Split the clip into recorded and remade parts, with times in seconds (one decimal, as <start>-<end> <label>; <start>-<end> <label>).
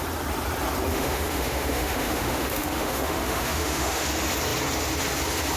0.0-0.9 recorded; 0.9-4.1 remade; 4.1-5.6 recorded